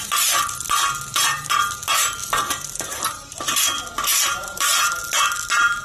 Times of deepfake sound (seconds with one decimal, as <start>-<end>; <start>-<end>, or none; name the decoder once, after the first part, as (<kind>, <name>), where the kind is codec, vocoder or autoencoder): 1.1-1.6 (vocoder, BigVGAN v2); 2.2-3.4; 4.1-5.0